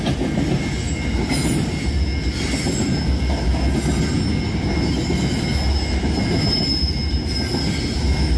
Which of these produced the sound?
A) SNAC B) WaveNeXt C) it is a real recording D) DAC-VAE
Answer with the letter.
C